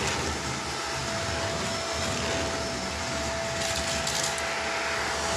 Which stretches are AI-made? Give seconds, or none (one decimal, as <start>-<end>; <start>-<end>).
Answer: none